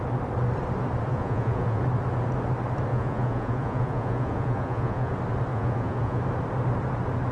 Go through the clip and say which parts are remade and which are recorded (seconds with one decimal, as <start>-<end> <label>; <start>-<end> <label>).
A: 0.0-1.1 recorded; 1.1-1.8 remade; 1.8-2.9 recorded; 2.9-5.1 remade; 5.1-5.5 recorded; 5.5-6.2 remade; 6.2-7.3 recorded

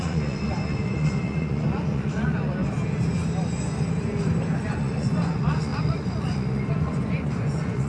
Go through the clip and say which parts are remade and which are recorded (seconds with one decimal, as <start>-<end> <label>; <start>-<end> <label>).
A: 0.0-2.6 remade; 2.6-4.6 recorded; 4.6-7.9 remade

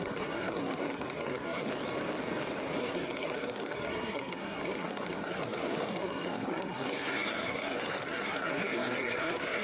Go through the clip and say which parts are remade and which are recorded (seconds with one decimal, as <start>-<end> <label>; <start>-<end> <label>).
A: 0.0-1.7 remade; 1.7-2.8 recorded; 2.8-9.6 remade

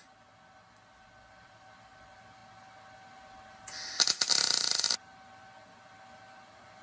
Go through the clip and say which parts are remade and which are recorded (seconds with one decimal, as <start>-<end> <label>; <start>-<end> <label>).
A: 0.0-6.8 recorded

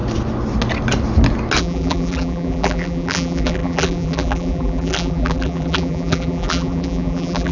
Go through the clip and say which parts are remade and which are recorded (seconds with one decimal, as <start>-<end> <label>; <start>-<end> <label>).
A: 0.0-1.6 recorded; 1.6-7.5 remade

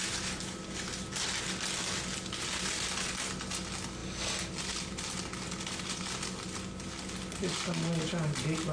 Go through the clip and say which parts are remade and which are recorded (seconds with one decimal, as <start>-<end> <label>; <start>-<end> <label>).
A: 0.0-8.7 recorded